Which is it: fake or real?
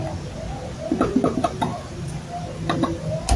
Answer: real